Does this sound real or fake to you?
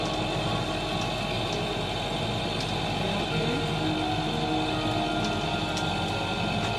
real